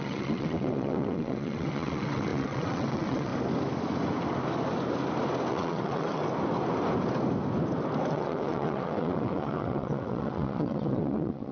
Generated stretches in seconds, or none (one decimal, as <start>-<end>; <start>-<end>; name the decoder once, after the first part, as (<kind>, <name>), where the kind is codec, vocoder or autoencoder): 0.0-3.3 (vocoder, WaveNeXt); 5.5-6.2; 8.1-11.5